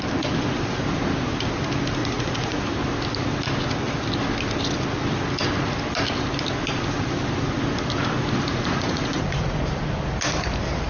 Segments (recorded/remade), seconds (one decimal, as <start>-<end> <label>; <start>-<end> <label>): 0.0-2.0 recorded; 2.0-2.6 remade; 2.6-8.5 recorded; 8.5-9.6 remade; 9.6-10.9 recorded